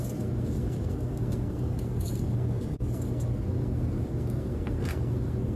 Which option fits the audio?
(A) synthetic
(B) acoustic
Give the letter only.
A